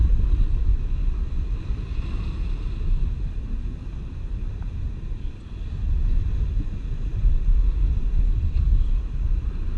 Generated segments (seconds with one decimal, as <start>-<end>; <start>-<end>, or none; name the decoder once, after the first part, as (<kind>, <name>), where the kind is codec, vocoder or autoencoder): none